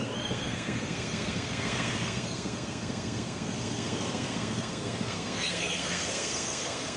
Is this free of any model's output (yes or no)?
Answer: no